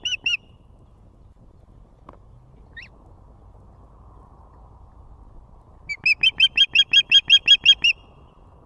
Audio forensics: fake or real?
real